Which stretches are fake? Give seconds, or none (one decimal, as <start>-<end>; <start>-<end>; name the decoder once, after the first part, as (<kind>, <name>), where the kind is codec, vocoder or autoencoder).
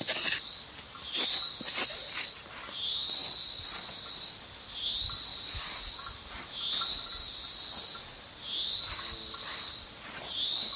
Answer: none